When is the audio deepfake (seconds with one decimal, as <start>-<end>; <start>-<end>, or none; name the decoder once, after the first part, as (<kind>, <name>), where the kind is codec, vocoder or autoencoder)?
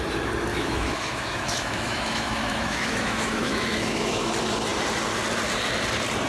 0.5-4.3 (autoencoder, DAC-VAE)